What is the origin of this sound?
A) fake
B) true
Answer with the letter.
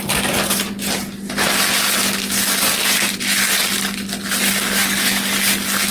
B